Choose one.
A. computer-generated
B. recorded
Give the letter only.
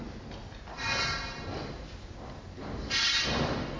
B